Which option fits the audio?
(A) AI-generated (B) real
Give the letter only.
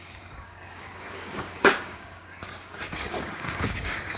A